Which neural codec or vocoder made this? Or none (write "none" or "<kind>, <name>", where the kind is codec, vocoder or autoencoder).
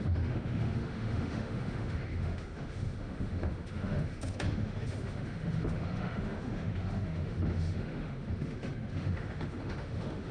autoencoder, DAC-VAE